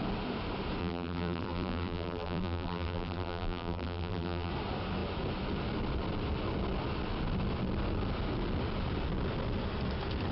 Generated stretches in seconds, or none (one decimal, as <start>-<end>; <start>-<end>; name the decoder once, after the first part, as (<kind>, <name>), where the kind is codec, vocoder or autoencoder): 0.8-4.5 (vocoder, BigVGAN v2)